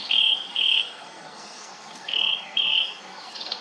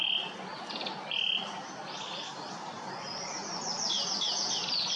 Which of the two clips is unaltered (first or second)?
second